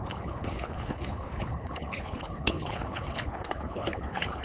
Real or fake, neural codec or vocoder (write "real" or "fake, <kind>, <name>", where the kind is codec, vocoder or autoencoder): fake, codec, HILCodec